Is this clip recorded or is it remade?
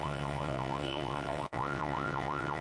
remade